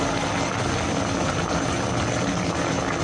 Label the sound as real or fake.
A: real